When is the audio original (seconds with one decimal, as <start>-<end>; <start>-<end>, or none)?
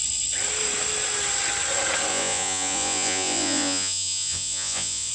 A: 0.0-2.1